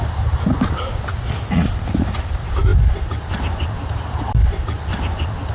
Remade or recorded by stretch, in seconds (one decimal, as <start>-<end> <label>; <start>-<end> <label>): 0.0-5.5 recorded